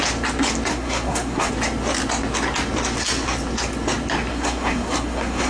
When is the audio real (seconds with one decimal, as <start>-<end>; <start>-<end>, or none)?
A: 0.0-0.7; 1.5-4.3